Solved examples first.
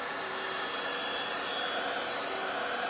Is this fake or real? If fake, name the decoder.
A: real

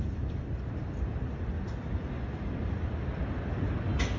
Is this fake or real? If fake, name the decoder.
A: real